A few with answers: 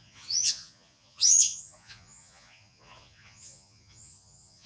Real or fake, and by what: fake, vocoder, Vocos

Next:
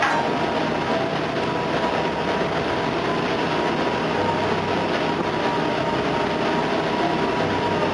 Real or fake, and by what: real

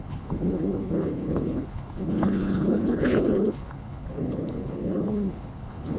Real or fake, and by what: fake, codec, HILCodec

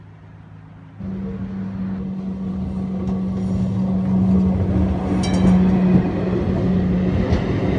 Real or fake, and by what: real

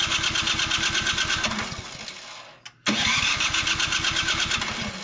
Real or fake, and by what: real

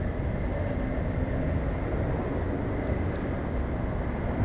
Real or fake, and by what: real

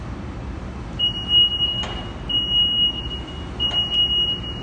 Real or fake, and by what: real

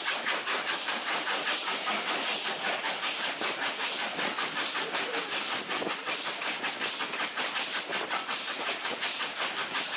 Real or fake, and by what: real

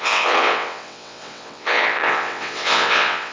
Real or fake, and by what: fake, vocoder, WaveNeXt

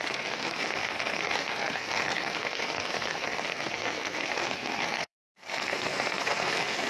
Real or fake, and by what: fake, codec, SNAC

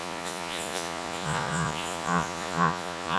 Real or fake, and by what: fake, vocoder, Vocos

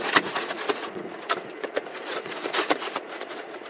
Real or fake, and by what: fake, vocoder, Vocos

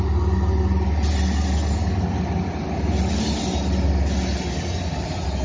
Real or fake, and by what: real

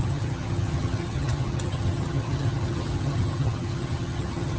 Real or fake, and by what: fake, vocoder, HiFi-GAN